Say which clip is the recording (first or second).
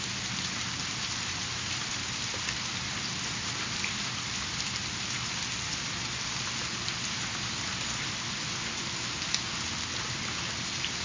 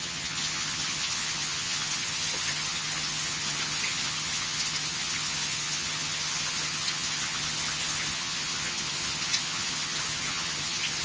first